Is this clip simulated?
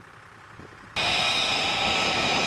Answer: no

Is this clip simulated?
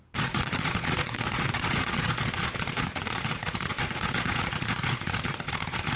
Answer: yes